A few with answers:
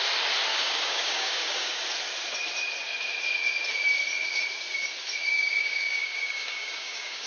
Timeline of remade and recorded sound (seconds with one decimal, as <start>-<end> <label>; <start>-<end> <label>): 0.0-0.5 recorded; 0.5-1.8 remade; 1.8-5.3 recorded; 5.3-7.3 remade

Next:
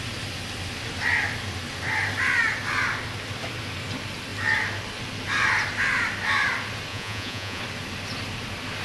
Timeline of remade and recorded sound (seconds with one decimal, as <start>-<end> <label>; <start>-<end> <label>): 0.0-6.9 recorded; 6.9-7.6 remade; 7.6-8.8 recorded

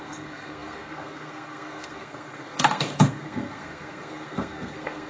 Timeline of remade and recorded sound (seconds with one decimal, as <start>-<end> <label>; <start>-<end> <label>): 0.0-5.1 remade

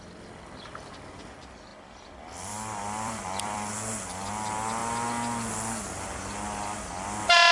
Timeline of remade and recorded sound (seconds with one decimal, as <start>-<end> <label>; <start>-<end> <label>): 0.0-1.7 recorded; 1.7-3.7 remade; 3.7-7.5 recorded